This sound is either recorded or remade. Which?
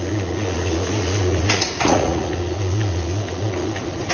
remade